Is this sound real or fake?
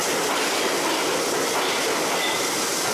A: real